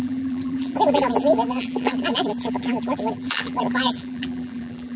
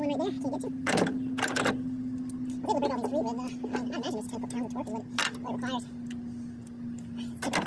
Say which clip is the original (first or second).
second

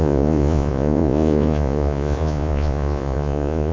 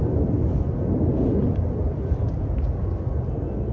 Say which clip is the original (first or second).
second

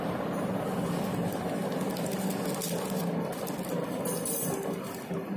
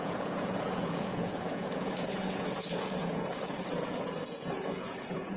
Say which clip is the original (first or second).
first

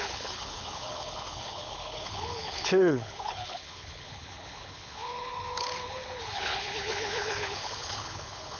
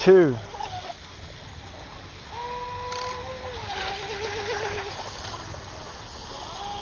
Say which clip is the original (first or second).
second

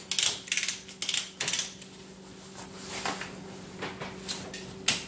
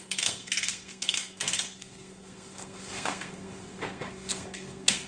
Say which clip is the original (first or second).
first